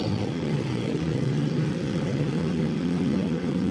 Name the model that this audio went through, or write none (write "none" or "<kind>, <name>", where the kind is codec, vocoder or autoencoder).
vocoder, WaveNeXt